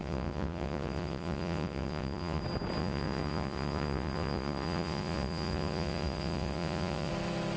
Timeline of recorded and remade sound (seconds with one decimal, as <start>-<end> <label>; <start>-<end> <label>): 0.0-2.4 remade; 2.4-2.8 recorded; 2.8-7.1 remade; 7.1-7.6 recorded